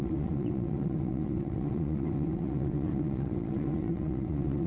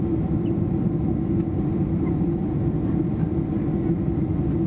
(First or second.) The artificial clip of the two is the first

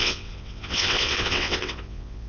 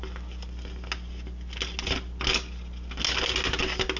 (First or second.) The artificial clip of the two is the first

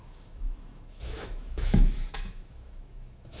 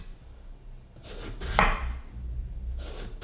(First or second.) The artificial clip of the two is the first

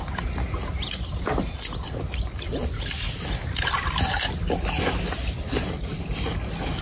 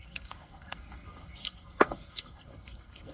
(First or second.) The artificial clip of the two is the second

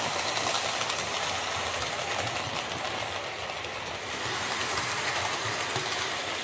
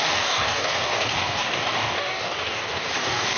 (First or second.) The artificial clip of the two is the second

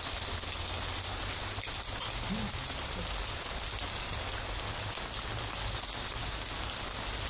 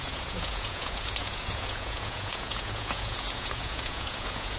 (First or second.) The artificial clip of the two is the second